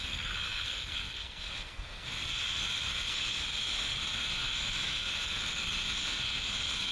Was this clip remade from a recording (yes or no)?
yes